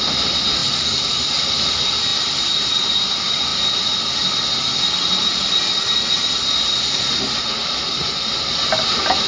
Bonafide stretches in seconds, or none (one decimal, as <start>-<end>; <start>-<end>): 0.0-9.3